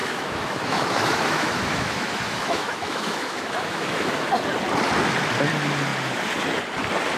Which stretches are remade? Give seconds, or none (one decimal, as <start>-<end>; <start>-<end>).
0.0-4.3